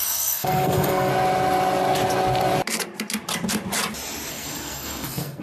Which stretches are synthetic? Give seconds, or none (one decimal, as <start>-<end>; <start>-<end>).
0.0-1.1; 4.3-5.4